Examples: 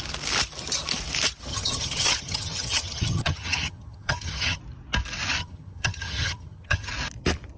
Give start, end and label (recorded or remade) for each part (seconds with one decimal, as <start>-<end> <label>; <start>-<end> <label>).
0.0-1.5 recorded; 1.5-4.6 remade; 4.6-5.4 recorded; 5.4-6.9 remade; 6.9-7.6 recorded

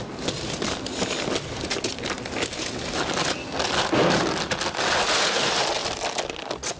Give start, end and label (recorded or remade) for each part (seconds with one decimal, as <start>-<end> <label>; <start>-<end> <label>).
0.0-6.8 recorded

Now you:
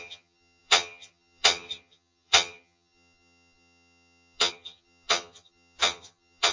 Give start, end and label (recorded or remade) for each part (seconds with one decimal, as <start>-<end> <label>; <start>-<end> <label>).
0.0-6.5 remade

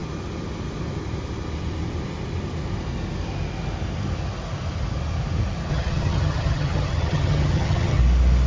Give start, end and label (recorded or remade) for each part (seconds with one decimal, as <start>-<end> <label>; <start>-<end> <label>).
0.0-5.7 recorded; 5.7-8.0 remade; 8.0-8.5 recorded